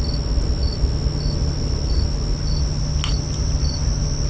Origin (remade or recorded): recorded